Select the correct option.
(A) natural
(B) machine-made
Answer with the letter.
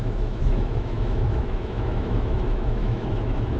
B